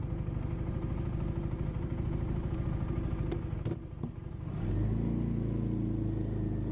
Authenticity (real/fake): real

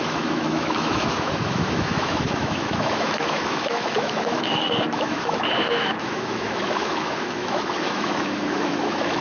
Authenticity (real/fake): fake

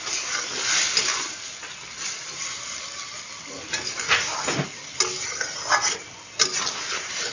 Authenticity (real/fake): real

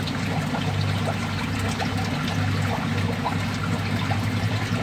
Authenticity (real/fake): real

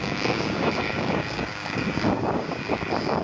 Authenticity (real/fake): fake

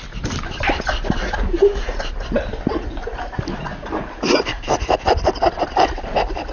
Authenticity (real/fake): real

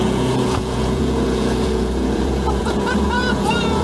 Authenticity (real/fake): fake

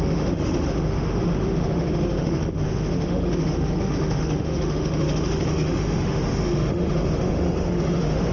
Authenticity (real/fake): fake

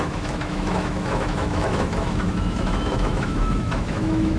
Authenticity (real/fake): fake